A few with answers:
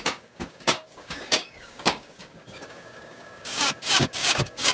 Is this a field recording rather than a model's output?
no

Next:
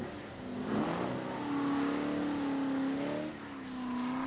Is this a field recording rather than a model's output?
yes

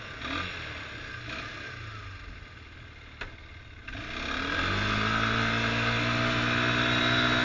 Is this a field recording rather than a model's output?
yes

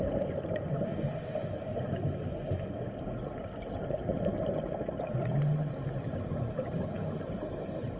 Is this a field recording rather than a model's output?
yes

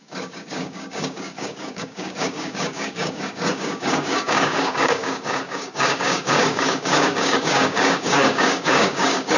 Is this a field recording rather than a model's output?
no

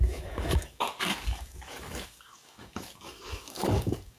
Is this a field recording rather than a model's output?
no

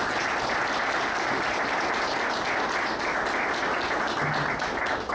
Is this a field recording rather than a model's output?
yes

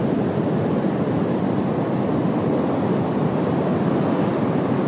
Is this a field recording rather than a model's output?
yes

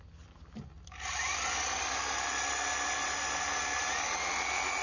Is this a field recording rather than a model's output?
yes